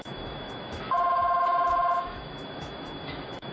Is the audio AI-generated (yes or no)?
yes